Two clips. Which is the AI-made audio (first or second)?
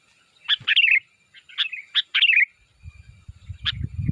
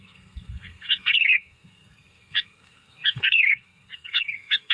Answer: second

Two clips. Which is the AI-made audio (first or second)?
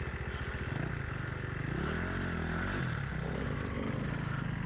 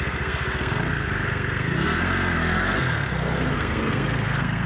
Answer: second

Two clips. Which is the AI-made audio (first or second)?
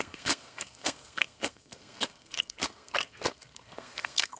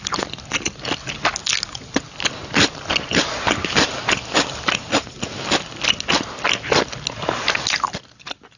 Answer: first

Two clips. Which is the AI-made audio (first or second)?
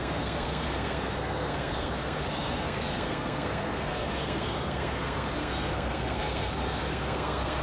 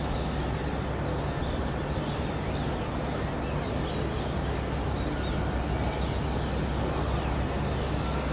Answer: first